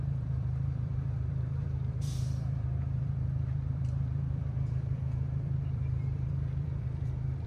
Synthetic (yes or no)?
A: yes